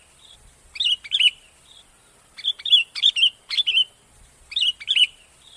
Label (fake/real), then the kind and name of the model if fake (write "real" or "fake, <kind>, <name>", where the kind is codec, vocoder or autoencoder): real